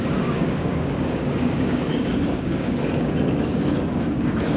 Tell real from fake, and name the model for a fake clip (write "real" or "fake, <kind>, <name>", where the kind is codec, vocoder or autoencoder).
fake, codec, DAC